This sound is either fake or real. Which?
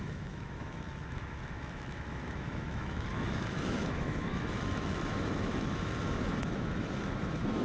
fake